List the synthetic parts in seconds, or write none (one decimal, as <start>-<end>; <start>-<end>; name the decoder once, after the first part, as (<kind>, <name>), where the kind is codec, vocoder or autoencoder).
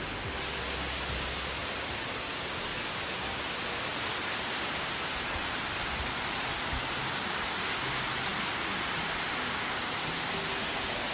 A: 1.6-2.6 (vocoder, BigVGAN v2); 4.1-7.0; 8.3-9.8